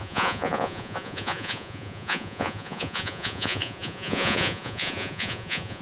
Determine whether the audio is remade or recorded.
remade